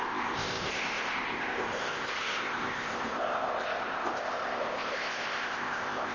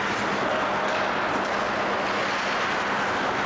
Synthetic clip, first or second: first